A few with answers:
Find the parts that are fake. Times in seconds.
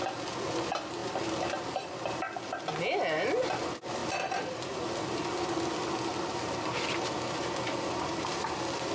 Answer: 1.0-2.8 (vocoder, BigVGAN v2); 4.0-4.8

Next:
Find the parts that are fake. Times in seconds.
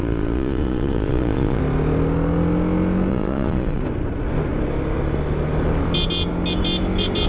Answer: 0.0-1.6 (vocoder, Vocos); 3.1-3.8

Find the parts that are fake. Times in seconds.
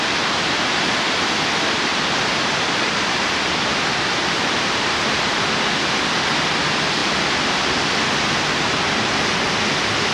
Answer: 1.9-5.5 (vocoder, BigVGAN v2)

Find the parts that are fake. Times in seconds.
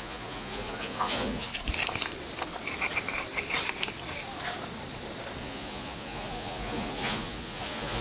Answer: 0.0-1.5 (vocoder, Vocos); 5.4-8.0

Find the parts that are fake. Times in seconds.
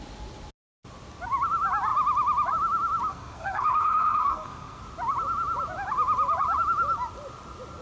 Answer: 3.1-4.8 (codec, SNAC)